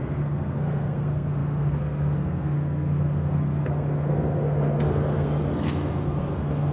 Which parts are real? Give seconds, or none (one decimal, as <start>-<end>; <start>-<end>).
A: none